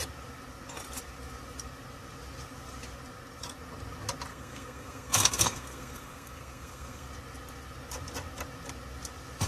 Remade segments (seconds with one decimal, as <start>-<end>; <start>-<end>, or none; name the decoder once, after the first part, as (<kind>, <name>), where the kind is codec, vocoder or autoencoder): 4.3-7.1 (codec, SNAC)